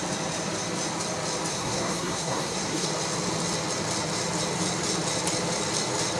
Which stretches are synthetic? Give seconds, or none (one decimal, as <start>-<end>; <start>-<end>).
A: 1.5-2.9